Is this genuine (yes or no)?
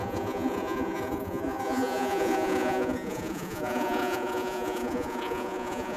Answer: no